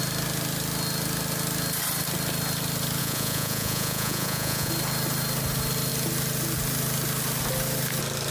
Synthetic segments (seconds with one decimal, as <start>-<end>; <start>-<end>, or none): 3.0-4.7